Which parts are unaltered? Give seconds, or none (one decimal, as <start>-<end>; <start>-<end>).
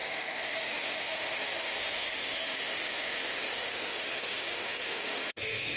none